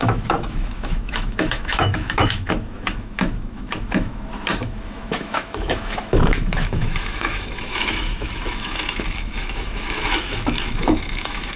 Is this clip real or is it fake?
fake